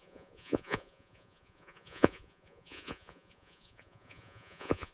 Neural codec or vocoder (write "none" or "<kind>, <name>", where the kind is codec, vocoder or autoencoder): vocoder, Vocos